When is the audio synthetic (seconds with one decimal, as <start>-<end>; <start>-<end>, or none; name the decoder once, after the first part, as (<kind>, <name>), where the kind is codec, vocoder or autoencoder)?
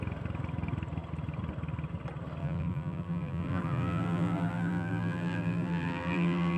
2.4-6.6 (vocoder, BigVGAN v2)